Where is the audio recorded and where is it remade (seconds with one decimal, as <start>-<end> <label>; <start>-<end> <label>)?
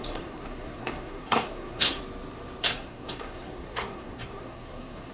0.0-2.0 remade; 2.0-2.6 recorded; 2.6-5.1 remade